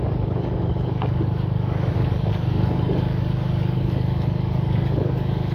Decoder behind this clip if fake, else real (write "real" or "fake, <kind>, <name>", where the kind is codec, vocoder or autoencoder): fake, codec, DAC